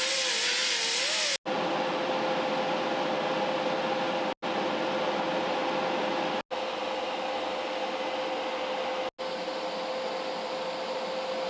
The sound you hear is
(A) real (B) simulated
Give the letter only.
A